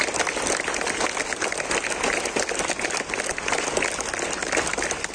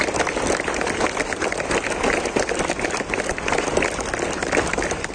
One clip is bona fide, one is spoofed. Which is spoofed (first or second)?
second